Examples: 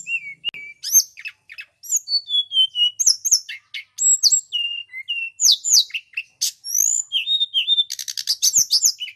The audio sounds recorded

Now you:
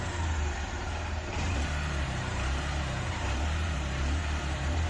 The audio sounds remade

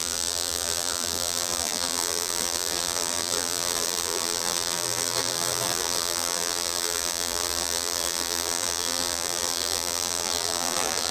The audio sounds remade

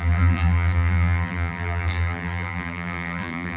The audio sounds remade